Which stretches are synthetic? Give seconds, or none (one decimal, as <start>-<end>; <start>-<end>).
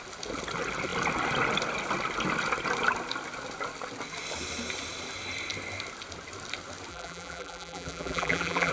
6.9-8.7